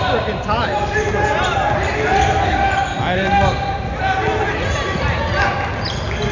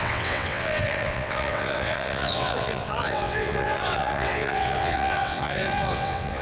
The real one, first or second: first